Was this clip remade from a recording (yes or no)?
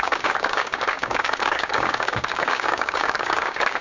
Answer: yes